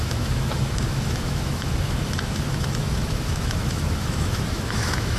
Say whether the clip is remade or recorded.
remade